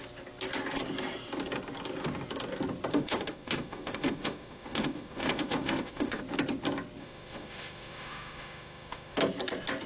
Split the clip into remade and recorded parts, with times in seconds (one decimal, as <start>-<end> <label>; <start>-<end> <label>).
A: 0.0-2.9 recorded; 2.9-6.2 remade; 6.2-7.0 recorded; 7.0-9.2 remade; 9.2-9.9 recorded